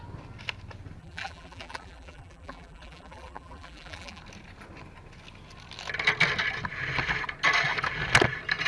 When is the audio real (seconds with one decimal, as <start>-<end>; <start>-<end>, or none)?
0.0-1.0; 4.2-8.7